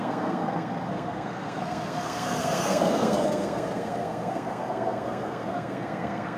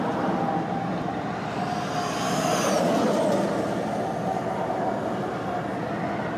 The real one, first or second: second